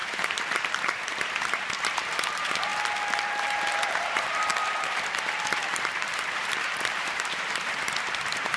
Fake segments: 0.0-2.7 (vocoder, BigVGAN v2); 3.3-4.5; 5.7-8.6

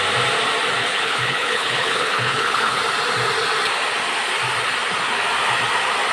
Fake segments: 0.8-2.8 (codec, HILCodec)